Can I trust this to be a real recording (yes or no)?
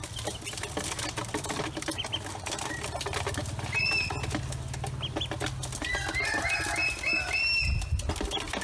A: yes